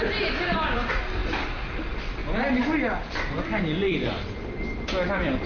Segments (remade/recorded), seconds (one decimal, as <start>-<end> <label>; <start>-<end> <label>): 0.0-2.2 remade; 2.2-3.1 recorded; 3.1-5.5 remade